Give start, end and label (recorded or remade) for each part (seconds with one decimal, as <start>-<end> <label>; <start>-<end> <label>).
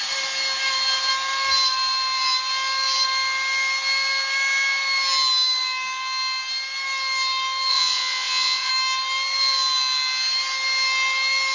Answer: 0.0-7.7 recorded; 7.7-8.7 remade; 8.7-11.5 recorded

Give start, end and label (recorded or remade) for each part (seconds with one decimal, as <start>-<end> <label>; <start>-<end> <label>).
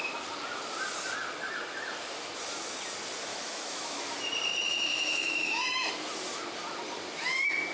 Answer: 0.0-3.3 recorded; 3.3-4.1 remade; 4.1-4.5 recorded; 4.5-5.9 remade; 5.9-7.7 recorded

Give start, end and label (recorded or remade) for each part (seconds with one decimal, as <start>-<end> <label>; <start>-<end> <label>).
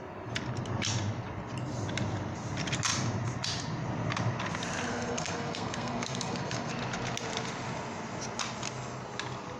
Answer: 0.0-4.9 recorded; 4.9-6.7 remade; 6.7-9.6 recorded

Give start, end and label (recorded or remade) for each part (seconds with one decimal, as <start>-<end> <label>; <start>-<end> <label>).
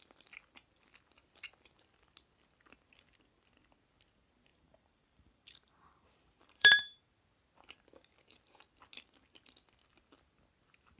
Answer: 0.0-4.5 recorded; 4.5-7.1 remade; 7.1-11.0 recorded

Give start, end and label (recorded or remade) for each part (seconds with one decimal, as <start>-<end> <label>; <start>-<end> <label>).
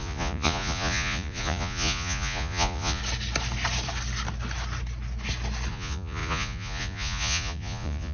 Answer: 0.0-3.0 remade; 3.0-5.7 recorded; 5.7-8.1 remade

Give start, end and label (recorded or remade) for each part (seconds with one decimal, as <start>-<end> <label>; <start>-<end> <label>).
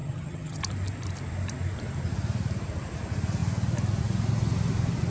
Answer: 0.0-0.6 remade; 0.6-5.1 recorded